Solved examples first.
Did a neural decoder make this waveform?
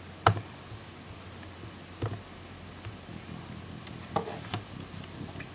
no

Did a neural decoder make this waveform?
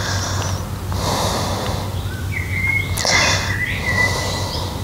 no